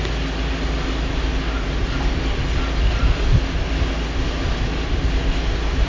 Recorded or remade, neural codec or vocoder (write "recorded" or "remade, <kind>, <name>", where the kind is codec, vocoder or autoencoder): recorded